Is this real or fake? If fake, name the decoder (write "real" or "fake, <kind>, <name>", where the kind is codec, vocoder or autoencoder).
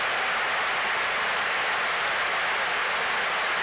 real